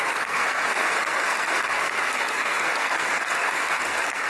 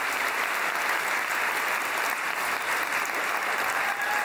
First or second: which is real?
second